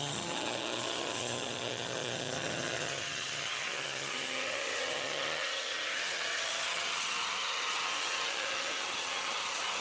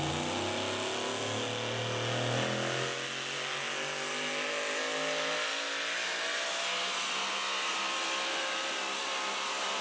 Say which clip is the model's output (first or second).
first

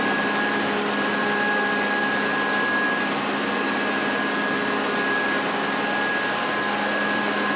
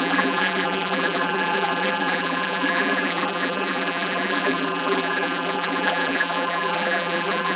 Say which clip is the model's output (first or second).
second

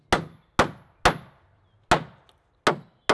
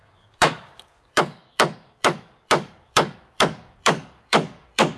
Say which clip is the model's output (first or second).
second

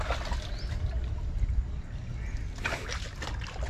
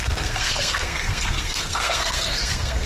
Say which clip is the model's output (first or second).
second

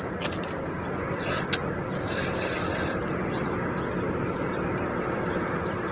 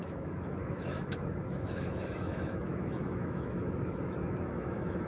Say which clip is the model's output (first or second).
second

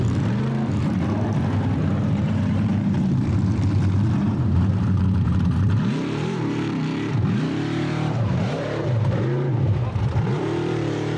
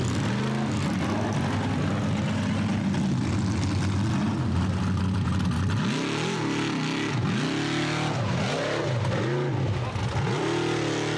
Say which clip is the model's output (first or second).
first